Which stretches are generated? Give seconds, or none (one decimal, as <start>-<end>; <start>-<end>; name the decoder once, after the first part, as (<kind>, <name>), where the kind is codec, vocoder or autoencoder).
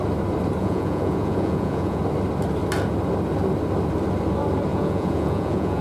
0.6-2.0 (vocoder, Vocos); 4.7-5.8